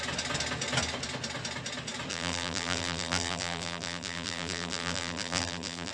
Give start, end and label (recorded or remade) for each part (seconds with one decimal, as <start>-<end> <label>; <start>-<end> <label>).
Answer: 0.0-2.1 recorded; 2.1-5.9 remade